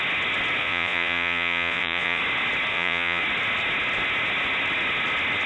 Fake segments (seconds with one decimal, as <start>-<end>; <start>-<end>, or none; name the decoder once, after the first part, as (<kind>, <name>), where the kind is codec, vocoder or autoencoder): 0.6-2.2 (vocoder, Vocos); 2.7-3.2

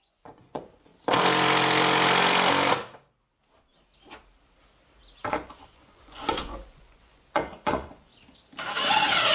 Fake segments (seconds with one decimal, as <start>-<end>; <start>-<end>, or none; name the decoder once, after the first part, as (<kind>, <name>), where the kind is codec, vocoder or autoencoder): 0.0-0.9 (vocoder, Vocos); 5.3-8.1